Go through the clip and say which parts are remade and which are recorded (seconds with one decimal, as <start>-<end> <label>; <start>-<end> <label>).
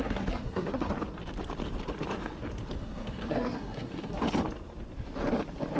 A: 0.0-0.9 remade; 0.9-2.8 recorded; 2.8-4.2 remade; 4.2-5.8 recorded